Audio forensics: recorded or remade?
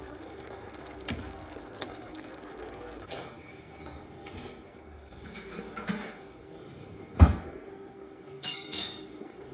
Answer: remade